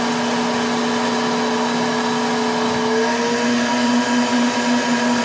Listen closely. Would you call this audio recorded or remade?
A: recorded